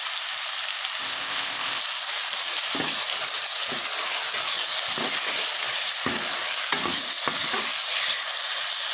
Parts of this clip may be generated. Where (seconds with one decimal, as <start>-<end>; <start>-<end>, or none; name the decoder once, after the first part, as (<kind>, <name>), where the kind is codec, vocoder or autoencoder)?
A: 1.0-1.8 (codec, ZipCodec)